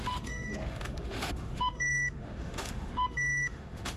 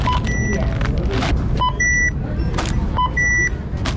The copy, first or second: first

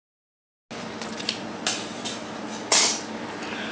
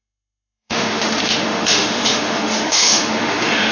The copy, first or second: second